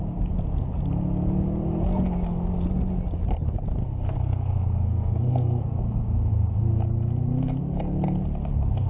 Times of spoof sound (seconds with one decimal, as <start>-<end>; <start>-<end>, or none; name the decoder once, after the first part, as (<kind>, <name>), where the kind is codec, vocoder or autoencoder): 3.8-5.6 (codec, SNAC)